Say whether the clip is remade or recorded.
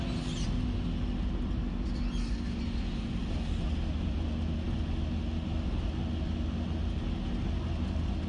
recorded